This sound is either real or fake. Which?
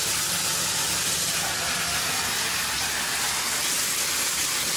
real